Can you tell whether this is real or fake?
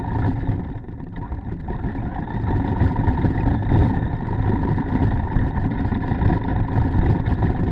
real